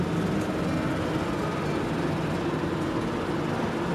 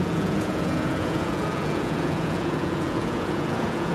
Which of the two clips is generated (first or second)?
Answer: second